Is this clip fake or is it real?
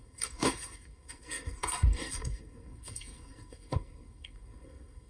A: fake